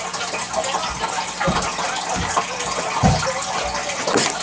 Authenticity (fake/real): real